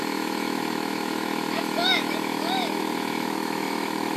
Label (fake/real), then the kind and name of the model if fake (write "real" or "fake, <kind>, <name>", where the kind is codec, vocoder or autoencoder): fake, autoencoder, DAC-VAE